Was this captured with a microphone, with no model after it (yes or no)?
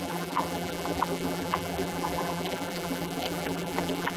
no